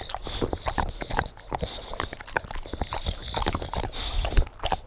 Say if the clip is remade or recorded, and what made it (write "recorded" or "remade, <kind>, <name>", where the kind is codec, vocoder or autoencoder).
recorded